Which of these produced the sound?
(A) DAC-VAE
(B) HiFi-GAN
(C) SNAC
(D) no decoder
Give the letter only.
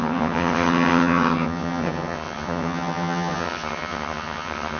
B